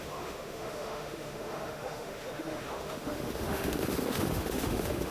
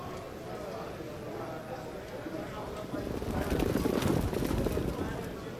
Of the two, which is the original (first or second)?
second